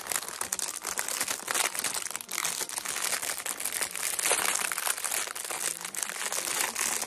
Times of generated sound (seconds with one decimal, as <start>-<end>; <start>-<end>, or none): none